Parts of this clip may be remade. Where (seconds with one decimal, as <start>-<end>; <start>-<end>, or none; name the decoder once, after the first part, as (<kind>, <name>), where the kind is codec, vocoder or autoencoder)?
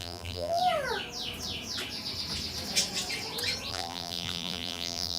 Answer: 0.0-0.6 (vocoder, BigVGAN v2); 3.7-5.2